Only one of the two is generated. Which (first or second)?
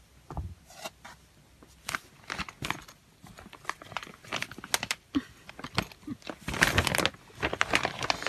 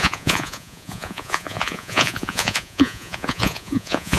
second